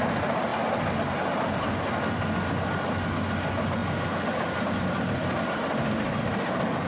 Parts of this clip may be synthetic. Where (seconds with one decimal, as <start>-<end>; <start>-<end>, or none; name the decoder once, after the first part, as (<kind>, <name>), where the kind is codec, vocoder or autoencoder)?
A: none

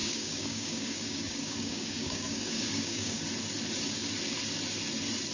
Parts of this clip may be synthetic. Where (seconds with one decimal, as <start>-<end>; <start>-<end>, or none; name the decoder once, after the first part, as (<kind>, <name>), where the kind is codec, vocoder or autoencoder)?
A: 0.0-3.2 (codec, DAC)

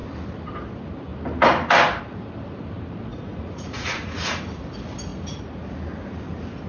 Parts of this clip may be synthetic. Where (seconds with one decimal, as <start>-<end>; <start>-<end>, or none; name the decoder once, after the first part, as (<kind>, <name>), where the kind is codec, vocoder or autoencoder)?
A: 3.1-4.4 (vocoder, Vocos)

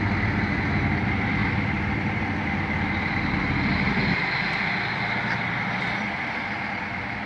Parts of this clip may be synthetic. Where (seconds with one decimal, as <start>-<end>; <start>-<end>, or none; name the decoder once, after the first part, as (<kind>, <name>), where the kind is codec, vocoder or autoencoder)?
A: none

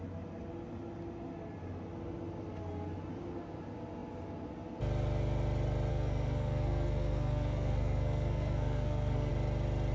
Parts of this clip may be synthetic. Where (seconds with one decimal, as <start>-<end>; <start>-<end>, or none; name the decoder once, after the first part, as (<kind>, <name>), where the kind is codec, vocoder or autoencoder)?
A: 5.9-9.3 (codec, SNAC)

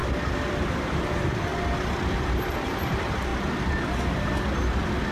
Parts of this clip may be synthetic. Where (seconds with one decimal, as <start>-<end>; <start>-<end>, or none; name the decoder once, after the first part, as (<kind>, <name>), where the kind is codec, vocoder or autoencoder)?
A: 0.5-1.5 (vocoder, BigVGAN v2); 2.1-3.3